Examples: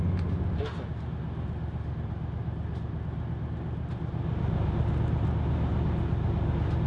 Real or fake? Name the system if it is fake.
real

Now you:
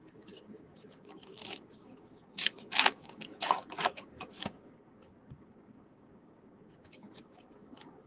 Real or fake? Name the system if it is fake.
fake, codec, DAC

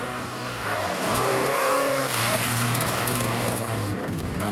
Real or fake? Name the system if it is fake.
fake, codec, DAC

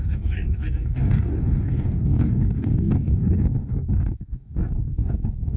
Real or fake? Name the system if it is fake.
fake, codec, DAC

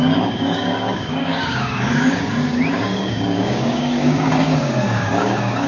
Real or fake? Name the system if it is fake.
fake, codec, DAC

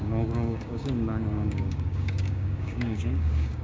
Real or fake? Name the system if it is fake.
fake, codec, DAC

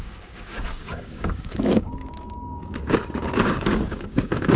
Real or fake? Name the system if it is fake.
fake, codec, DAC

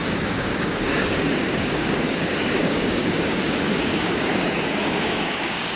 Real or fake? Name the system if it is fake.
fake, codec, DAC